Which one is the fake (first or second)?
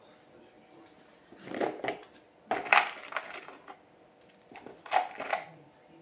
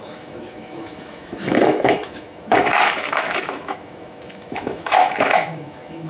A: second